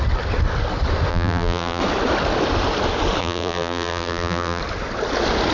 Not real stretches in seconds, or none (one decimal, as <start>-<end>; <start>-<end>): 1.1-1.8; 3.2-4.6